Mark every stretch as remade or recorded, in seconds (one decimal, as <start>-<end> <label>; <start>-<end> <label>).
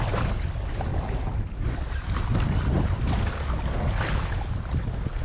0.0-5.2 recorded